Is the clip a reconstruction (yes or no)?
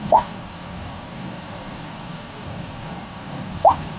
yes